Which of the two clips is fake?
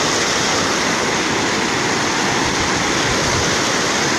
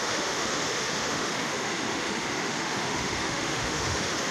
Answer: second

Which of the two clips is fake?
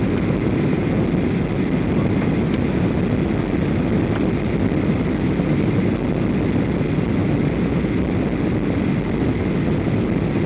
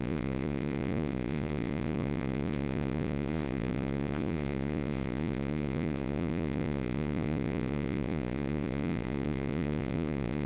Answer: second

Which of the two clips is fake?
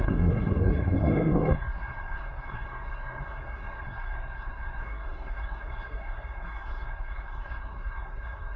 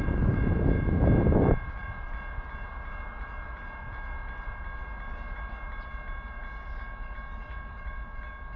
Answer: first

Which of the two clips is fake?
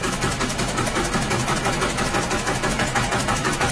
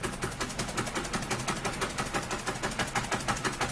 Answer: first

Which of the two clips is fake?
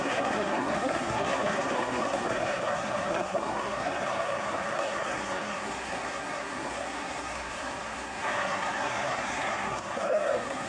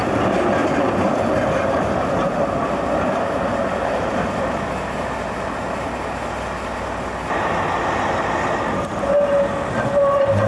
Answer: first